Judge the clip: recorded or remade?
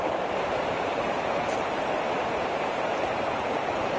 remade